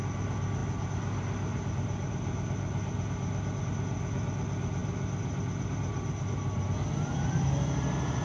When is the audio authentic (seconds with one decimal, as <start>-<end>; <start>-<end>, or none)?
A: 0.0-8.2

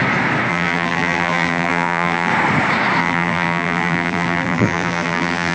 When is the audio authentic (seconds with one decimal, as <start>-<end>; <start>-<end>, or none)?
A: 0.0-0.5; 2.3-3.0

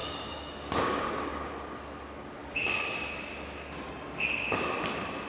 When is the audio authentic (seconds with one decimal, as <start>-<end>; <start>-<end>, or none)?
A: 1.5-2.4; 3.9-5.3

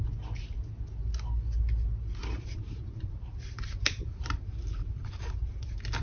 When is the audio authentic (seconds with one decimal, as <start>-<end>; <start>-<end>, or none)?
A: 0.0-2.2